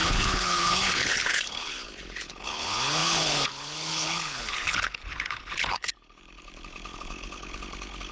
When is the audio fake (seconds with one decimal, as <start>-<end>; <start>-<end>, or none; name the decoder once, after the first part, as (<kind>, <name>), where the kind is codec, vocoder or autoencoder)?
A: 0.0-8.1 (codec, HILCodec)